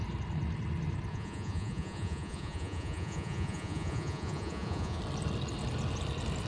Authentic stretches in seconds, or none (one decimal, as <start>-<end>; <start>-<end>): 0.0-1.1; 5.0-6.5